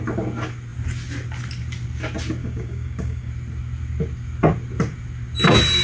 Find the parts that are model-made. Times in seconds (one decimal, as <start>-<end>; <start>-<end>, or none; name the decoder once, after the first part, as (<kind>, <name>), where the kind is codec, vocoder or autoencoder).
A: 2.4-3.3 (codec, DAC)